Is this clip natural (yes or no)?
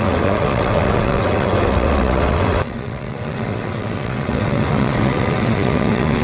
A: no